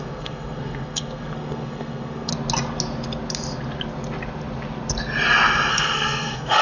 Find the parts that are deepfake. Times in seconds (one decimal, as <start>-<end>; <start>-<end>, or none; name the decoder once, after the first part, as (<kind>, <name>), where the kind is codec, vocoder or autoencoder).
0.0-2.3 (codec, SNAC); 5.7-6.6